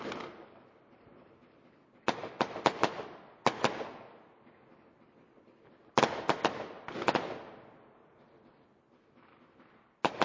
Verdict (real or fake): real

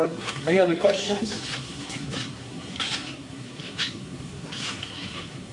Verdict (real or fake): fake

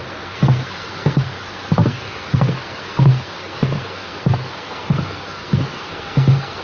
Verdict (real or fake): fake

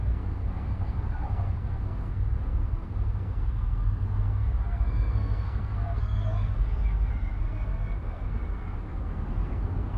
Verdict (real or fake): fake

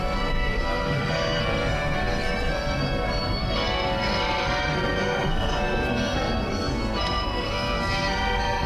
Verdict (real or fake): fake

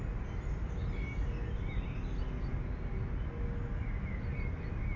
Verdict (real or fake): real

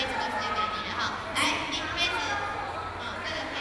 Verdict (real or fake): real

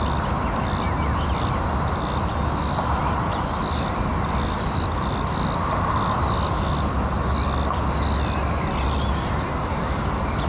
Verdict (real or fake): real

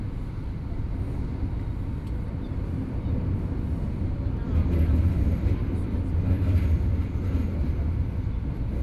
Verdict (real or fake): real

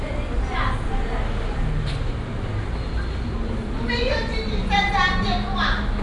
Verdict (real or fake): real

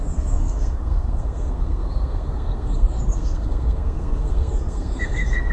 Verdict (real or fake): fake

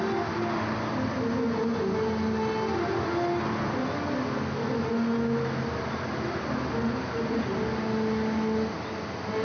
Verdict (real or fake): real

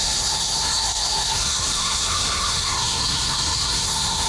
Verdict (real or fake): fake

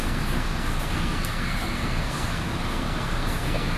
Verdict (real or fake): fake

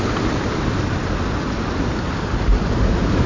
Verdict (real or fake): real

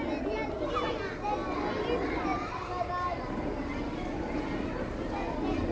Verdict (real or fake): real